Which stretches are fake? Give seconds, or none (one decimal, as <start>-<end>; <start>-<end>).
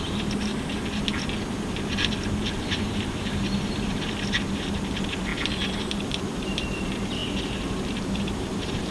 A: 0.0-0.5; 2.5-5.3; 6.1-8.9